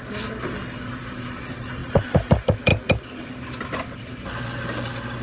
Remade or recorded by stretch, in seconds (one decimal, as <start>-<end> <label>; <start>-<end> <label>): 0.0-1.8 recorded; 1.8-2.3 remade; 2.3-2.7 recorded; 2.7-3.4 remade; 3.4-5.2 recorded

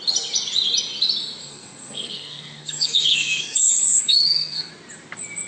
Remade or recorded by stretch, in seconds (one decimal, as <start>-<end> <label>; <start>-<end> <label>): 0.0-1.4 recorded; 1.4-4.7 remade; 4.7-5.5 recorded

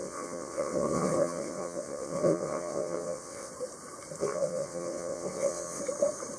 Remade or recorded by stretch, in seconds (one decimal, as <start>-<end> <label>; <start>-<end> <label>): 0.0-3.5 remade; 3.5-4.2 recorded; 4.2-5.8 remade; 5.8-6.4 recorded